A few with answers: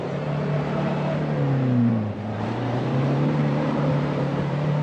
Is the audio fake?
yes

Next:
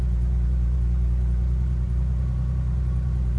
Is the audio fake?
yes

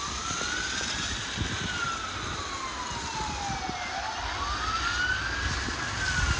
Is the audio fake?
no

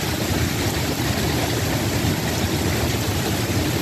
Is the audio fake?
no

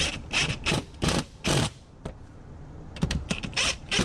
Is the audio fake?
yes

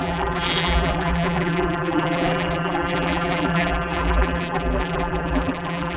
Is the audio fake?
yes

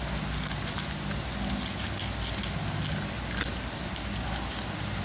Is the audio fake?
no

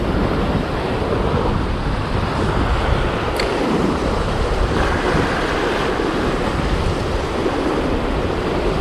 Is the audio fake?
yes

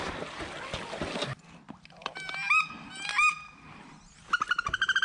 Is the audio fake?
no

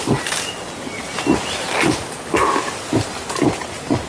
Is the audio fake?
no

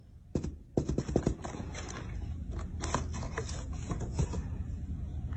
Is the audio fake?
no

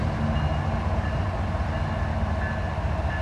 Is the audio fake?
no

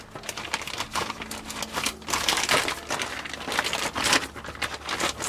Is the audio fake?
no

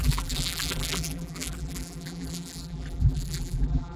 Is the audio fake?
yes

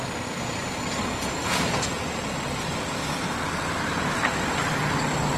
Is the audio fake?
no